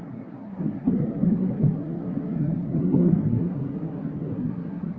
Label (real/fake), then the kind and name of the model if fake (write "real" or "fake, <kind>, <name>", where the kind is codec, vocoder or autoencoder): fake, codec, SNAC